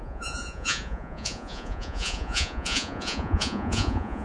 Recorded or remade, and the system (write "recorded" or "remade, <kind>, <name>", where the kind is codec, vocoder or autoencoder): remade, vocoder, Vocos